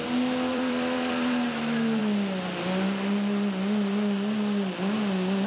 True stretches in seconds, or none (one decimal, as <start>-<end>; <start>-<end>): 0.0-0.5; 2.0-5.5